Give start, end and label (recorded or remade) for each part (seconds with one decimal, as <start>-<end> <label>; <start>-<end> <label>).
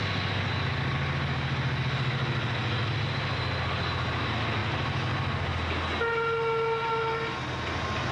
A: 0.0-8.1 recorded